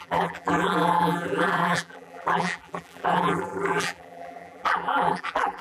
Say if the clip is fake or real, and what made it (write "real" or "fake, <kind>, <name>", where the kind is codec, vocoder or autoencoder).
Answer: fake, vocoder, BigVGAN v2